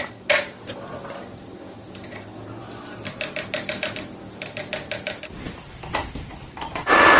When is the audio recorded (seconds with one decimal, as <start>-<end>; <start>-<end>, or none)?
0.0-7.2